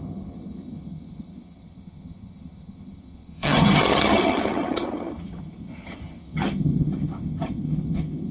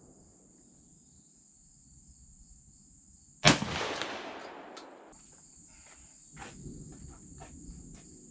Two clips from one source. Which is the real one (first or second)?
second